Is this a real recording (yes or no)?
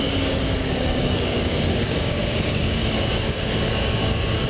no